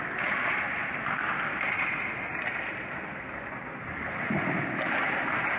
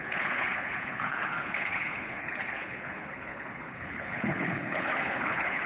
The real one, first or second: first